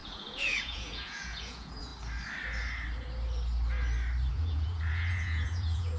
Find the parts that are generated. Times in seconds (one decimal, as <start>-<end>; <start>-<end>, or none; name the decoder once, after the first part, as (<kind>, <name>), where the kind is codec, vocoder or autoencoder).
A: 0.0-1.9 (vocoder, Vocos); 4.3-6.0

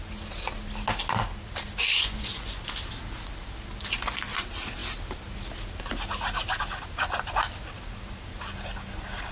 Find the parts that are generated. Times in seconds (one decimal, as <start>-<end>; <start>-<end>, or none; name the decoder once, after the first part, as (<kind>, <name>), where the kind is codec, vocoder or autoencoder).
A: 1.8-2.6 (vocoder, Vocos)

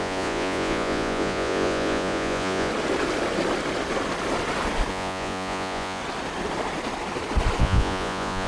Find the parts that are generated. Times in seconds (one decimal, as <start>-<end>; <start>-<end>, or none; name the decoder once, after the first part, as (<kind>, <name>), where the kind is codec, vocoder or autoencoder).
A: 0.0-2.7 (vocoder, Vocos); 4.9-6.0; 7.6-8.5